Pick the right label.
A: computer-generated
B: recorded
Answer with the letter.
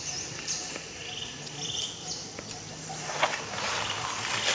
B